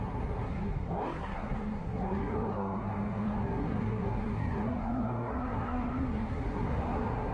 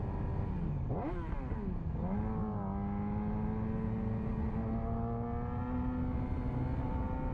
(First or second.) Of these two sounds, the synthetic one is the first